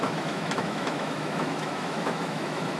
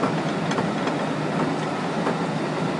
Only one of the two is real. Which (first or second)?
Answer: second